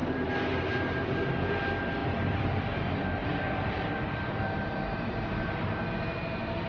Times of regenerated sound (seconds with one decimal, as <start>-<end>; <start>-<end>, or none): 2.0-2.8; 3.2-5.8